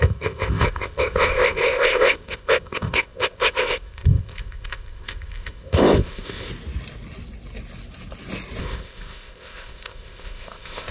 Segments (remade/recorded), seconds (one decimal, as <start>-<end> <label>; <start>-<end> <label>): 0.0-6.5 remade; 6.5-8.6 recorded; 8.6-10.9 remade